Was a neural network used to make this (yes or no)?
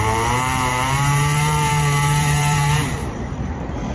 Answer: yes